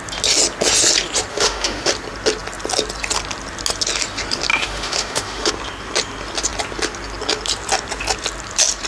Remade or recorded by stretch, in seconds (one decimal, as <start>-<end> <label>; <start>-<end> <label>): 0.0-1.3 recorded; 1.3-1.9 remade; 1.9-4.5 recorded; 4.5-5.5 remade; 5.5-8.9 recorded